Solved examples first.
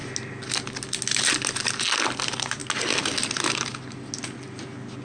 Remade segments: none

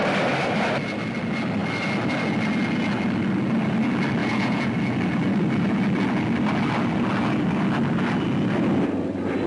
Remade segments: 4.2-4.7 (vocoder, Vocos)

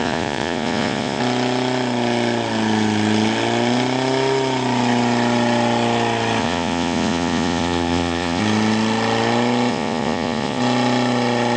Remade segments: 0.0-1.2 (vocoder, Vocos); 6.4-8.4; 9.7-10.6

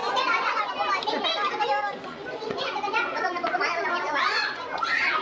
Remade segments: 0.0-0.7 (vocoder, Vocos); 2.1-4.8

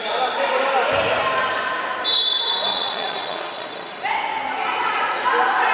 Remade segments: 2.7-4.0 (vocoder, Vocos)

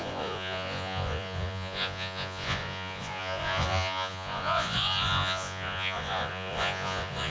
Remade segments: 0.0-7.3 (vocoder, Vocos)